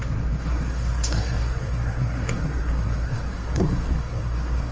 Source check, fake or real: fake